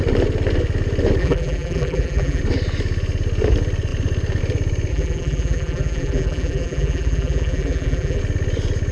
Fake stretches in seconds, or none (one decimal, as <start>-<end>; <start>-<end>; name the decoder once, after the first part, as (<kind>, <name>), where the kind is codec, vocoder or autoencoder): 1.2-2.4 (vocoder, BigVGAN v2); 4.9-8.2